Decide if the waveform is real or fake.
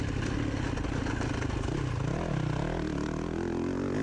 real